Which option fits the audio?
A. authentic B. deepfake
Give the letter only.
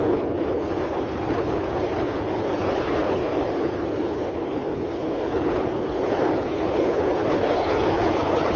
B